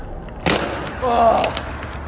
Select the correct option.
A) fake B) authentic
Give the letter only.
B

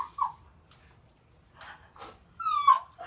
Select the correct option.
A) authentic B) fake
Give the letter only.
A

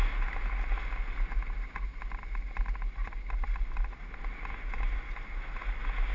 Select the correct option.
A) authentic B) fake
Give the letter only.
A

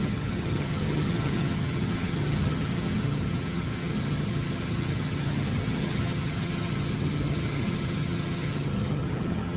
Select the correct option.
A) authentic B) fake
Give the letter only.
B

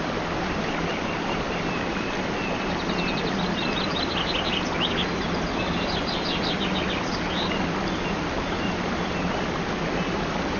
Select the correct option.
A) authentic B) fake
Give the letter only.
A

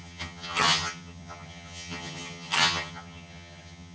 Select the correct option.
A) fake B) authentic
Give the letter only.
A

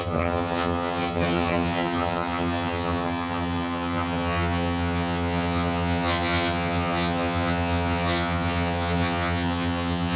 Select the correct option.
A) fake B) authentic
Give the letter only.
A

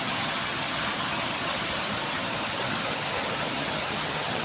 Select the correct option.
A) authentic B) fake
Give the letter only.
B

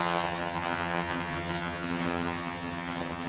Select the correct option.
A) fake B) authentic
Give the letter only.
A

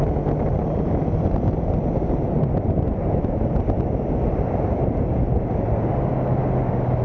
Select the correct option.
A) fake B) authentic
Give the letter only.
B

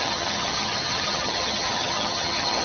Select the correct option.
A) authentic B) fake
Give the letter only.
B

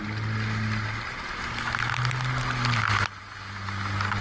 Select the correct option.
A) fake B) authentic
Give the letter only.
B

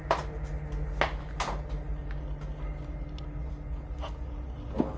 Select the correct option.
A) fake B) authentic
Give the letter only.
B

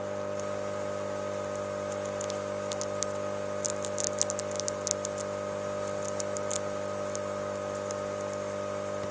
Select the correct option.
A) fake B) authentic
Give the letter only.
B